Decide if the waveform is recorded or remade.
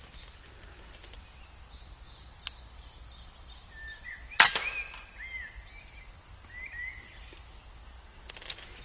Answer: recorded